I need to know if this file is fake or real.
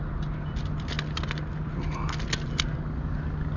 real